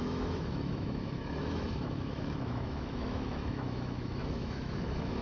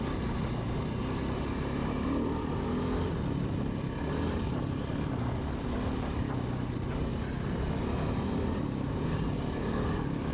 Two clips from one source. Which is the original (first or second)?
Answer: second